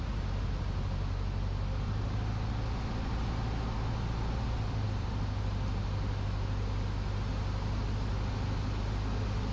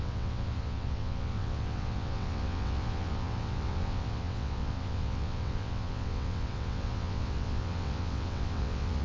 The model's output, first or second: second